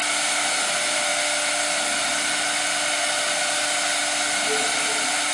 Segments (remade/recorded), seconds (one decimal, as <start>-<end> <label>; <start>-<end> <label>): 0.0-5.3 recorded